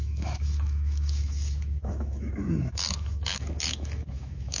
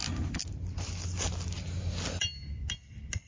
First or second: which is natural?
second